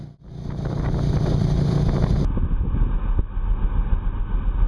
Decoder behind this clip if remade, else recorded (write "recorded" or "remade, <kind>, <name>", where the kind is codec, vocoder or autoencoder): recorded